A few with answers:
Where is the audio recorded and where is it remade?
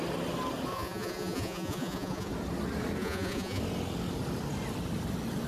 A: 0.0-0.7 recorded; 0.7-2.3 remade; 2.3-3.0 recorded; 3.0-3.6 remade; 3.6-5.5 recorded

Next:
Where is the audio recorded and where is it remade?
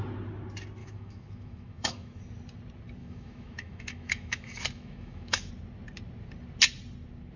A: 0.0-0.8 recorded; 0.8-2.2 remade; 2.2-3.0 recorded; 3.0-5.5 remade; 5.5-7.4 recorded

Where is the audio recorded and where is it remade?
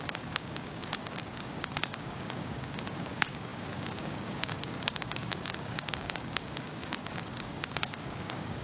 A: 0.0-8.6 remade